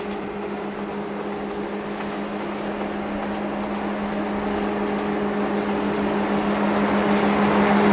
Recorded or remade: recorded